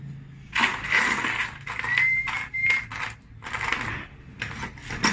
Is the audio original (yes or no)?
yes